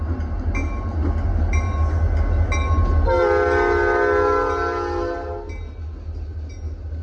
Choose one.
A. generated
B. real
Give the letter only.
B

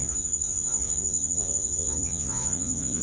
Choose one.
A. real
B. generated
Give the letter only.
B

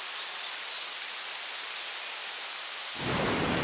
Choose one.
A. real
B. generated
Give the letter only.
A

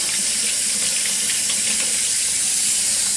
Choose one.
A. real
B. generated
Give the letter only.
A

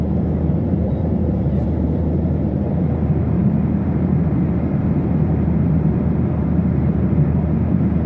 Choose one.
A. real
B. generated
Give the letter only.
B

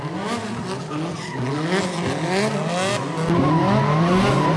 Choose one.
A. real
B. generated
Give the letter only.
A